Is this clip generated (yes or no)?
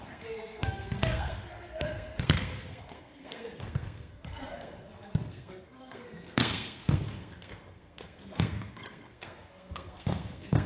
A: yes